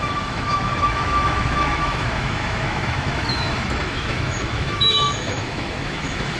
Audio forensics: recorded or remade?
remade